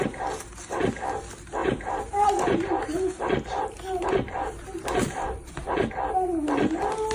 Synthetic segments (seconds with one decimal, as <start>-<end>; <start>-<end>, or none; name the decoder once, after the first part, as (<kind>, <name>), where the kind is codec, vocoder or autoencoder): 1.6-5.9 (vocoder, BigVGAN v2)